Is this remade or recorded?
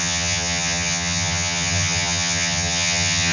remade